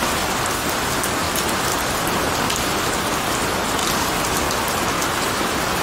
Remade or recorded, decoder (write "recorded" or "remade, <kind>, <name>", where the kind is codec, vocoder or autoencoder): recorded